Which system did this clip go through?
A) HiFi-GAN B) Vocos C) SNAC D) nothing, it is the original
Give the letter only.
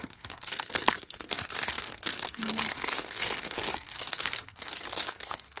C